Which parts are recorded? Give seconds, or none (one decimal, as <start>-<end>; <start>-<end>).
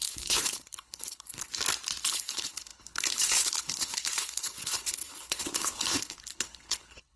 1.5-2.1